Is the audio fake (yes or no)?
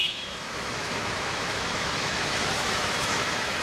yes